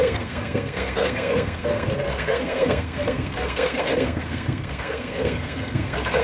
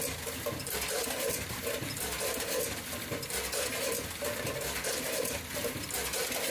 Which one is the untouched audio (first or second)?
second